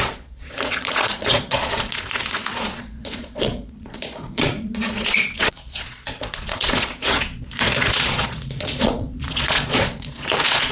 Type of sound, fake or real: fake